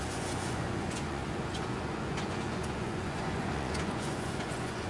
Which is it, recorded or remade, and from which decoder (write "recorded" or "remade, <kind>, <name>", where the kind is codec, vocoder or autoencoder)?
remade, vocoder, Vocos